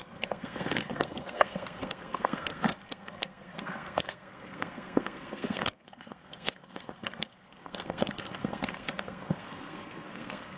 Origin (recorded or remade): remade